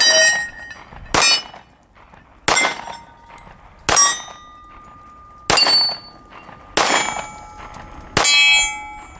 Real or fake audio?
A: real